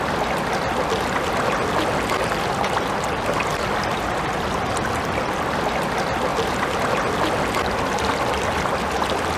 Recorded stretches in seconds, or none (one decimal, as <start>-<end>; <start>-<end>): 0.0-6.3; 6.8-9.4